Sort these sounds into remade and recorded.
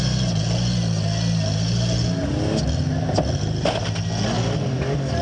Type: recorded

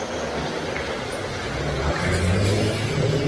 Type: recorded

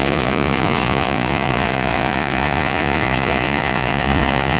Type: remade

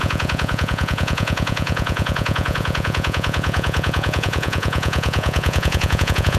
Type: remade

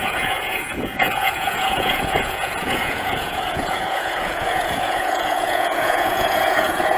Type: remade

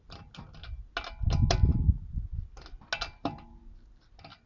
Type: recorded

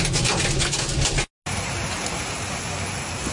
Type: recorded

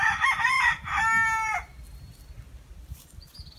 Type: recorded